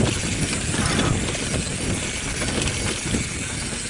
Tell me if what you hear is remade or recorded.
recorded